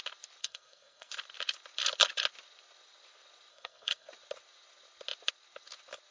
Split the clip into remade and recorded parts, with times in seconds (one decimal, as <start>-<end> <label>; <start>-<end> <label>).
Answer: 0.0-0.4 recorded; 0.4-1.1 remade; 1.1-3.5 recorded; 3.5-4.1 remade; 4.1-6.1 recorded